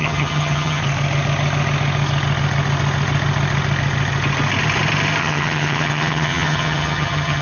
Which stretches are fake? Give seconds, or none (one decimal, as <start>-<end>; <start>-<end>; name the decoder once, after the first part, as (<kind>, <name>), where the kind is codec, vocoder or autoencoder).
0.0-0.8 (vocoder, HiFi-GAN); 5.2-7.4